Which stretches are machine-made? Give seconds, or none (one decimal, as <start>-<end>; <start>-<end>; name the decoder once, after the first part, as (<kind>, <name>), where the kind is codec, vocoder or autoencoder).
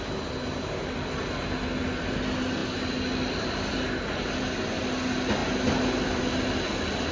none